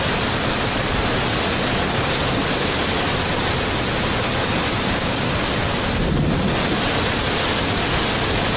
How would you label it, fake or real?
real